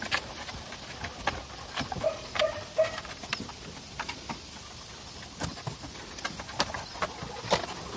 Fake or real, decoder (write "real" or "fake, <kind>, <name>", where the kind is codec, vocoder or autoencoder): real